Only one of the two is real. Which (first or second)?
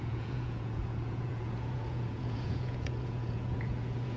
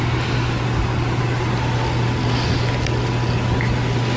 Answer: second